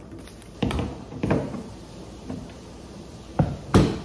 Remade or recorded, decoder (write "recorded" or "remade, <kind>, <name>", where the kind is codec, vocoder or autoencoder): remade, vocoder, BigVGAN v2